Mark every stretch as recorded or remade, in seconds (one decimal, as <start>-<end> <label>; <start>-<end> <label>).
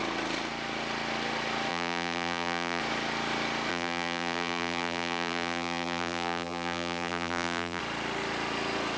0.0-1.7 recorded; 1.7-2.8 remade; 2.8-3.7 recorded; 3.7-7.8 remade; 7.8-9.0 recorded